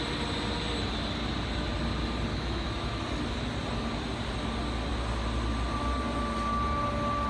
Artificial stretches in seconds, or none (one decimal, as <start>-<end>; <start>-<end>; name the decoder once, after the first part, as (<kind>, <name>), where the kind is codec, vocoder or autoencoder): 2.3-3.0 (autoencoder, DAC-VAE)